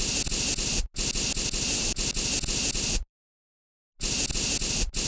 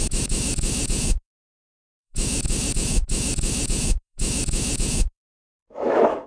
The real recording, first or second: first